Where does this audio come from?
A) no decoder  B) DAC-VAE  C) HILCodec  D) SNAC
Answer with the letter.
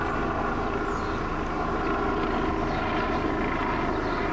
A